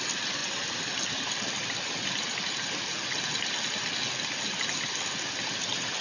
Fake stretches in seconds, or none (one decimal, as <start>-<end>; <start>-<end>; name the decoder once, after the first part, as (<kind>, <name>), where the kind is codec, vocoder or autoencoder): none